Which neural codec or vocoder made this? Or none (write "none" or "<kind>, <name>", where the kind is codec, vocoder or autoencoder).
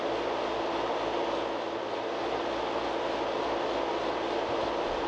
none